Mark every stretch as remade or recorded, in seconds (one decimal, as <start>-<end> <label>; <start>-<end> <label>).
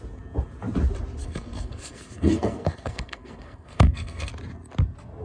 0.0-1.2 recorded; 1.2-4.3 remade; 4.3-5.2 recorded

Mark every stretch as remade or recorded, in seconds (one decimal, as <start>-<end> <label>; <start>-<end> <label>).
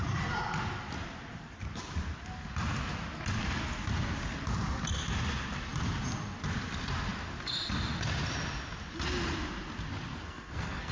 0.0-10.1 recorded; 10.1-10.9 remade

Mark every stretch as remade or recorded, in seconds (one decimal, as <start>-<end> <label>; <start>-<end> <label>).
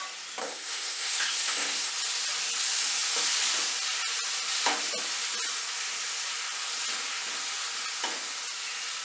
0.0-0.4 recorded; 0.4-1.9 remade; 1.9-9.0 recorded